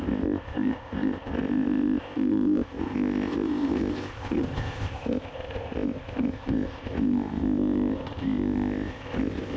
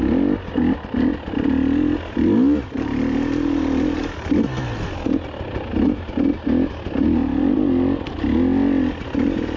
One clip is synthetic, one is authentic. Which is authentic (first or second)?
second